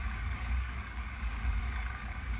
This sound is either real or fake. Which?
fake